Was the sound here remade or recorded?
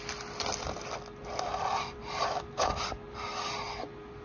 recorded